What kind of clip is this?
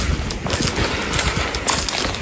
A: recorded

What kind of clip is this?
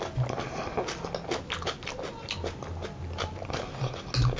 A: recorded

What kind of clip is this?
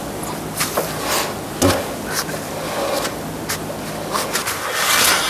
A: recorded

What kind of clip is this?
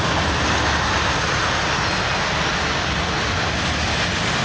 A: recorded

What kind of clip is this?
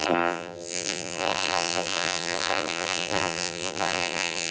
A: remade